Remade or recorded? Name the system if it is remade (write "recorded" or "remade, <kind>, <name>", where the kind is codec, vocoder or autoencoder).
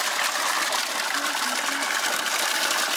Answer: recorded